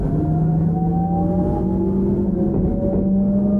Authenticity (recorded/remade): recorded